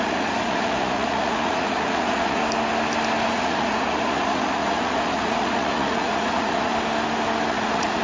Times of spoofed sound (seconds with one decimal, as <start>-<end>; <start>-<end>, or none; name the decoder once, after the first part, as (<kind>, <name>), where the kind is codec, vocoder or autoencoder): 0.0-2.4 (vocoder, Vocos); 3.3-6.7; 7.5-8.0